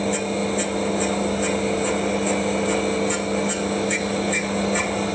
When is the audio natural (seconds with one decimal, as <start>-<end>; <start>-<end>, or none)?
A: 0.0-5.1